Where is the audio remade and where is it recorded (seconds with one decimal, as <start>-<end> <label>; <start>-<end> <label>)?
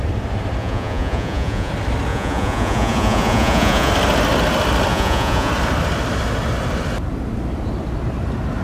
0.0-0.6 recorded; 0.6-1.7 remade; 1.7-2.1 recorded; 2.1-3.9 remade; 3.9-4.9 recorded; 4.9-5.5 remade; 5.5-8.6 recorded